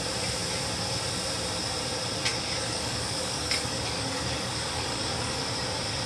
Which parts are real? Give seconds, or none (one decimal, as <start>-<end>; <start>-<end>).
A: 0.0-2.3; 5.4-6.1